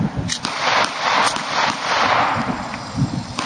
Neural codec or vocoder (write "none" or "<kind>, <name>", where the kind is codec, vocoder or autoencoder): none